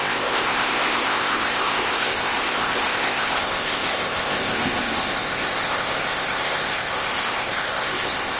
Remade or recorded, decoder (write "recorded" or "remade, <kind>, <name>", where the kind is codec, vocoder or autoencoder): remade, codec, ZipCodec